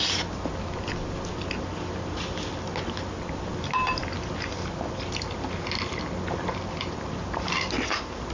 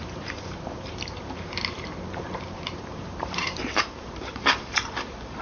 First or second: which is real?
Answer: first